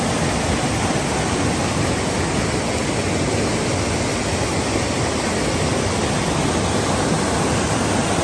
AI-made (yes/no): no